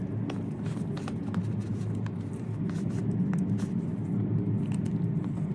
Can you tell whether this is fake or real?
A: real